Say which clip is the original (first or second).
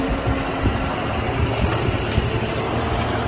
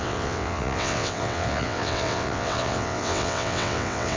first